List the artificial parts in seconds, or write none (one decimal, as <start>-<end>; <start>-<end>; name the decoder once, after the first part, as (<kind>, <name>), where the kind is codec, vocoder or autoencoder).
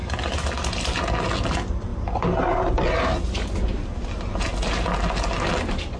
none